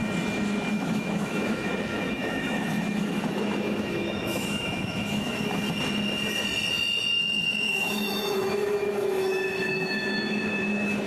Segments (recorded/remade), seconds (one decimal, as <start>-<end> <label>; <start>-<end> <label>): 0.0-0.7 recorded; 0.7-5.6 remade; 5.6-7.2 recorded; 7.2-11.1 remade